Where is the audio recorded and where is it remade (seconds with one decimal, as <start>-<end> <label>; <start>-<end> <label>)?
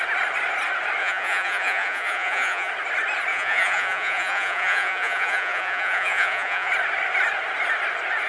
0.0-1.0 recorded; 1.0-2.7 remade; 2.7-3.3 recorded; 3.3-6.7 remade; 6.7-8.3 recorded